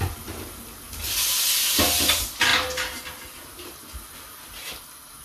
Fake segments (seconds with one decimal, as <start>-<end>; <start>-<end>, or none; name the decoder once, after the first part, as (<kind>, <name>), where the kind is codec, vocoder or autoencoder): none